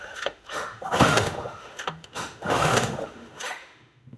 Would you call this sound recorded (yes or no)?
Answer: no